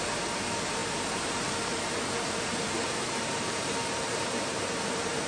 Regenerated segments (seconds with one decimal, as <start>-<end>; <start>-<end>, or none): 0.0-5.3